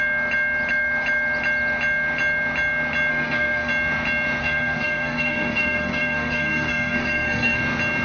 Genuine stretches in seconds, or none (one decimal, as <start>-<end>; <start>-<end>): 0.0-3.1; 3.7-4.4; 7.6-8.0